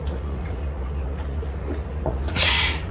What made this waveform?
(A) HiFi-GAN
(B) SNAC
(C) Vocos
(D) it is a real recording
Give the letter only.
C